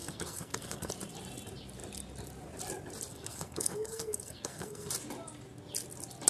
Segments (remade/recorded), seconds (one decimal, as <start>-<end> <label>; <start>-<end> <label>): 0.0-0.9 remade; 0.9-3.1 recorded; 3.1-4.9 remade; 4.9-6.3 recorded